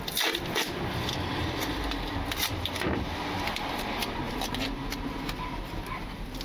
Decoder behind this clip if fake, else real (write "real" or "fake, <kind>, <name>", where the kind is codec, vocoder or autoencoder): real